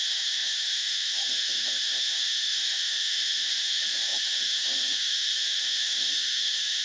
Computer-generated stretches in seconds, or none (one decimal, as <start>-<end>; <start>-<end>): 0.0-6.8